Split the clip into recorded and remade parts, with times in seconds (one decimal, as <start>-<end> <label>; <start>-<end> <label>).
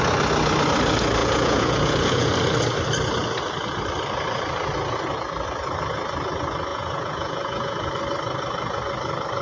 0.0-1.2 recorded; 1.2-2.3 remade; 2.3-6.7 recorded; 6.7-7.9 remade; 7.9-9.4 recorded